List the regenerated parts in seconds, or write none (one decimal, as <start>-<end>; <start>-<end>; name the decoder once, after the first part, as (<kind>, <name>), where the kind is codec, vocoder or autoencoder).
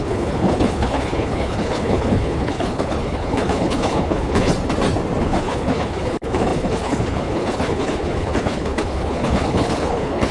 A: 0.0-4.5 (codec, HILCodec); 5.2-10.3